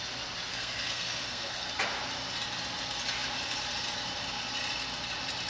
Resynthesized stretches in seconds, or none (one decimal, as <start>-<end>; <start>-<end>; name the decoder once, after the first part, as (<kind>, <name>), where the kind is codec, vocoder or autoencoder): 0.5-1.7 (codec, SNAC)